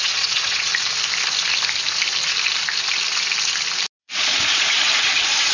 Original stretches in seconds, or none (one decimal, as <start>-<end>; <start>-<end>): 0.7-4.0